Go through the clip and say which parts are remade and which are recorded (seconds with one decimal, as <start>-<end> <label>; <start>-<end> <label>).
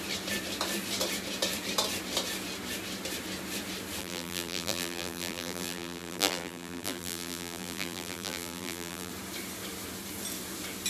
0.0-4.0 recorded; 4.0-9.1 remade; 9.1-10.9 recorded